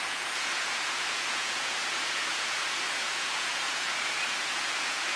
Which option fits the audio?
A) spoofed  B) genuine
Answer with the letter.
A